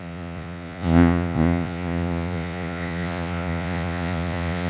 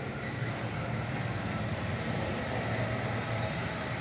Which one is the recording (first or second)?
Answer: second